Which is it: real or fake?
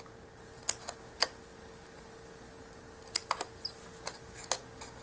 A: real